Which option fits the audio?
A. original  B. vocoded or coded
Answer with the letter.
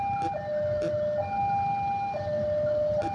A